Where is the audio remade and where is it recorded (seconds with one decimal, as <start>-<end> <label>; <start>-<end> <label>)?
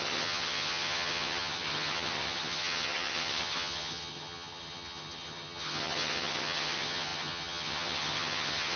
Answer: 0.0-8.8 remade